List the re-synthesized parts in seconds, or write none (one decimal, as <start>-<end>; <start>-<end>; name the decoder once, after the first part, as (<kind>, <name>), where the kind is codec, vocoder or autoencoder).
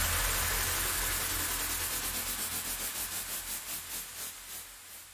2.9-3.5 (vocoder, BigVGAN v2)